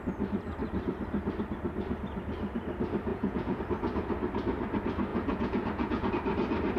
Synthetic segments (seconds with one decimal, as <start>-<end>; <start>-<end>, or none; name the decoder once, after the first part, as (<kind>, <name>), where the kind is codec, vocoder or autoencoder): 3.1-3.6 (vocoder, Vocos); 5.1-6.1